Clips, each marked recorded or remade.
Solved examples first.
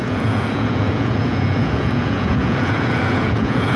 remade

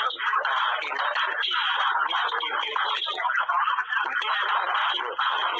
recorded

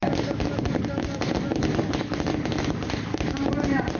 recorded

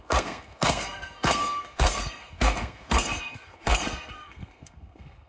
remade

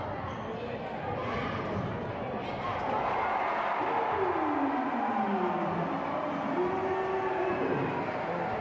recorded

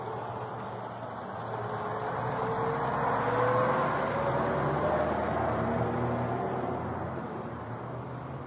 recorded